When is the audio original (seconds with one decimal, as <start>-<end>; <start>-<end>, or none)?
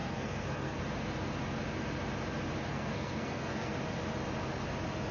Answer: 0.8-2.7; 3.8-5.1